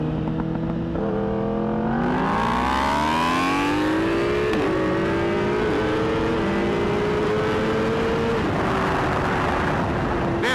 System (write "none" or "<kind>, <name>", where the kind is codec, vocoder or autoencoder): none